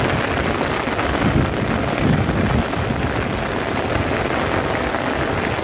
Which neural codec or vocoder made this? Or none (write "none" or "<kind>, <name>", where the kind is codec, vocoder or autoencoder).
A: none